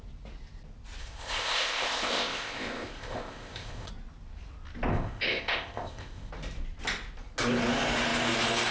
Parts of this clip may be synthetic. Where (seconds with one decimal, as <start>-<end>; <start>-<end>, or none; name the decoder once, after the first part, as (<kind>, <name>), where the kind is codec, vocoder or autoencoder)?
1.0-3.9 (codec, ZipCodec); 4.9-6.3

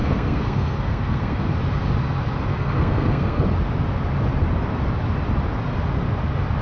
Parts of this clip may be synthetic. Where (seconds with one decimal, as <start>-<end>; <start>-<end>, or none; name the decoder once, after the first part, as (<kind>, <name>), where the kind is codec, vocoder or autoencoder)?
0.0-1.5 (codec, SNAC); 2.5-3.4

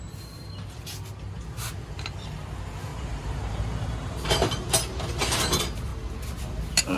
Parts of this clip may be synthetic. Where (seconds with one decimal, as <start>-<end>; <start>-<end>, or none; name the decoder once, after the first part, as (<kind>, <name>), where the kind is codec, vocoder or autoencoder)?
2.9-4.7 (vocoder, BigVGAN v2)

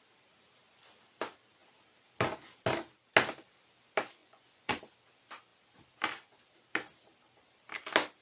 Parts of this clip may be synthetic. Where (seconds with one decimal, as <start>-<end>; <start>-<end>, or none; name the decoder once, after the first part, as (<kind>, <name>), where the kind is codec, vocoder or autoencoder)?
4.2-4.8 (vocoder, Vocos)

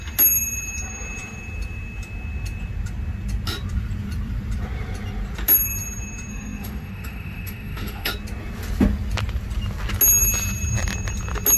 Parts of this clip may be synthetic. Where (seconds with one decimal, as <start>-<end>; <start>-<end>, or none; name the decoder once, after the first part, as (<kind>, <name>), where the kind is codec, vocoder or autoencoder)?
6.3-8.1 (autoencoder, DAC-VAE)